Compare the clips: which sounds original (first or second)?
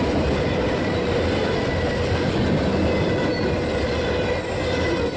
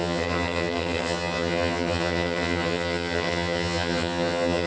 first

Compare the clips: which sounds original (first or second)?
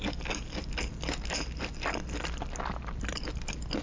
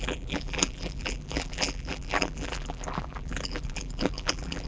first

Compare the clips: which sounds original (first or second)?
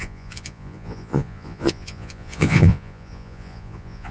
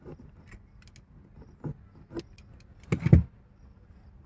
second